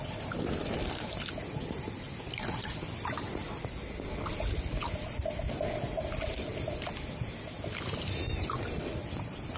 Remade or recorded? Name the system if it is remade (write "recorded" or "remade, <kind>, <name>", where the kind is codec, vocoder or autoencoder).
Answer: recorded